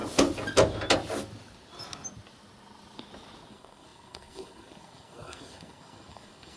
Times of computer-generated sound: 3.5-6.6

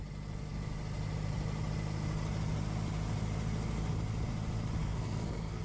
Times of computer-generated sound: 4.8-5.6